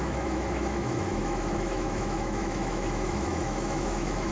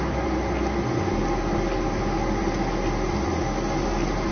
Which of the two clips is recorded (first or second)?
second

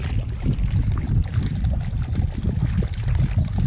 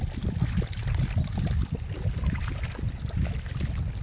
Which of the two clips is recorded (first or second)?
first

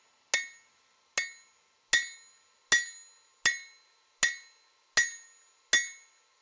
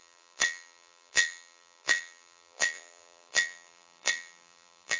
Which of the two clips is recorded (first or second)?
first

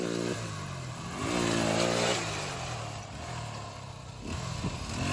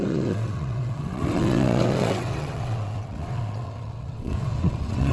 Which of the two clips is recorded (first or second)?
first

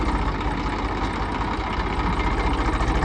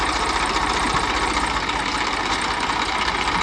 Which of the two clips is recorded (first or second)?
first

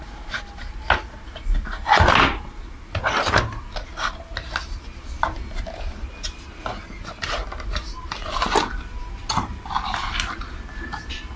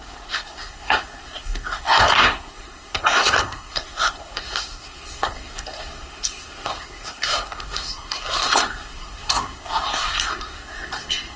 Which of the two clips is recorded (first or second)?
first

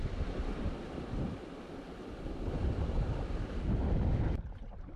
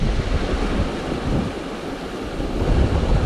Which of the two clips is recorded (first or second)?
second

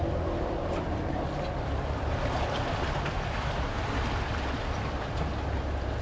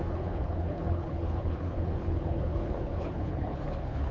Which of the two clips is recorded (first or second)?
first